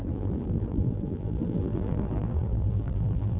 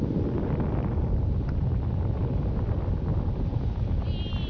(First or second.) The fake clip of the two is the first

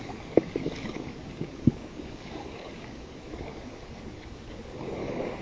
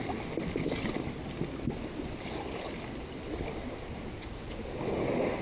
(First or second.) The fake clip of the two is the first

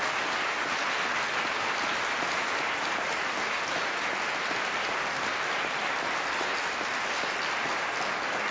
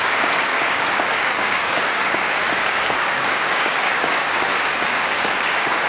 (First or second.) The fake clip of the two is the second